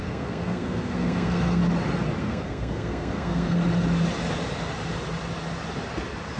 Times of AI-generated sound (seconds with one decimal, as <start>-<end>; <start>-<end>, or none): 0.0-1.6; 2.2-3.6